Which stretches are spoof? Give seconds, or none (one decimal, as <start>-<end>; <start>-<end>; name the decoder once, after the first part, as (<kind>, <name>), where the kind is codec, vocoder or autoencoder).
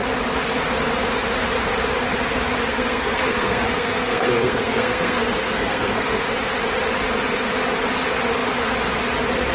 2.7-6.2 (codec, SNAC)